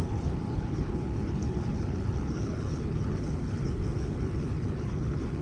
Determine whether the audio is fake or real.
fake